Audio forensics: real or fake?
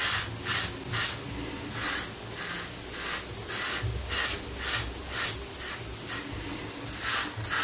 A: real